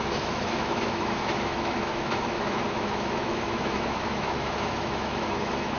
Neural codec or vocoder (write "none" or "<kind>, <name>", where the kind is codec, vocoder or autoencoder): autoencoder, DAC-VAE